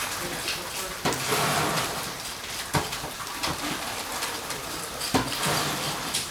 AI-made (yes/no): yes